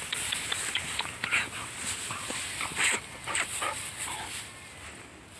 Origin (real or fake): fake